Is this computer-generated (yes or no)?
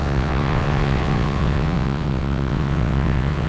yes